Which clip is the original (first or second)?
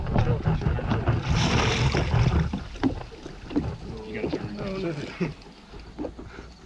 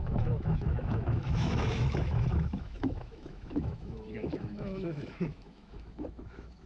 first